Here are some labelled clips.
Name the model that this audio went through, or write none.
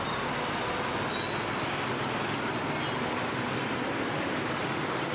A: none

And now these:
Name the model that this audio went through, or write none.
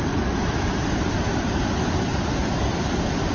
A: vocoder, BigVGAN v2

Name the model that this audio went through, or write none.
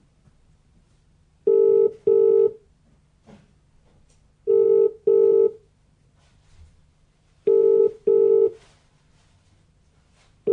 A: none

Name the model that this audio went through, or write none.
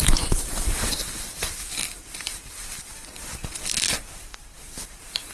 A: vocoder, BigVGAN v2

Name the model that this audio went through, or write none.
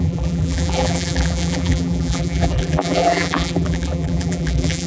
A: vocoder, BigVGAN v2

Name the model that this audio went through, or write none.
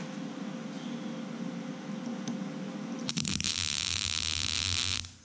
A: none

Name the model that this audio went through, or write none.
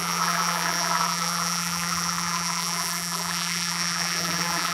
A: vocoder, BigVGAN v2